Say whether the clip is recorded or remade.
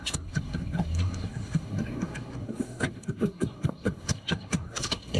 remade